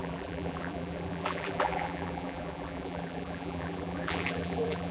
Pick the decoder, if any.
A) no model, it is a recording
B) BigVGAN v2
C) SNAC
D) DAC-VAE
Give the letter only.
B